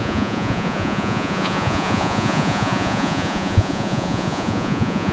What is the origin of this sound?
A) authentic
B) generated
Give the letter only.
B